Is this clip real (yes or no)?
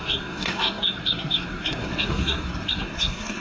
no